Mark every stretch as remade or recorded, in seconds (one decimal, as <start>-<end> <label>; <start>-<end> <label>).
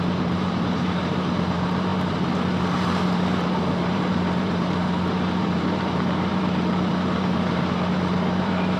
0.0-8.8 remade